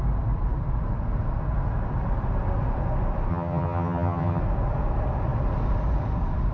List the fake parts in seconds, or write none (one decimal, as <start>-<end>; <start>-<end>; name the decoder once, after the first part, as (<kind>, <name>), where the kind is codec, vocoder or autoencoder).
3.3-4.4 (vocoder, HiFi-GAN)